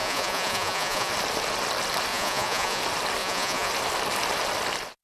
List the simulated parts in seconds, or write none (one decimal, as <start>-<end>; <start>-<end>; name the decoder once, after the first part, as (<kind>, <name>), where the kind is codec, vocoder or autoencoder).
0.0-1.1 (vocoder, Vocos); 2.1-2.8; 3.2-3.7